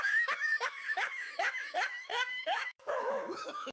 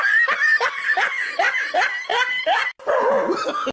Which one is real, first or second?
second